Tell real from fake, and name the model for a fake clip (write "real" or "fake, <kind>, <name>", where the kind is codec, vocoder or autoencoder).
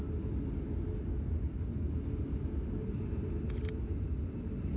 real